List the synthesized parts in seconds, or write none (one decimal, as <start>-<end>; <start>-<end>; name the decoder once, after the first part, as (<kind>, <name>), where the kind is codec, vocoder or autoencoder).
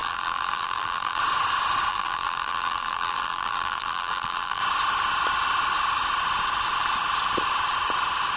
0.0-1.2 (vocoder, BigVGAN v2); 1.9-4.6